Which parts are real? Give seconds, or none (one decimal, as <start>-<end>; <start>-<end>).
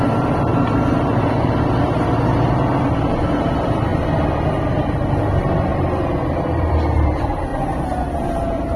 3.9-4.7; 7.5-8.1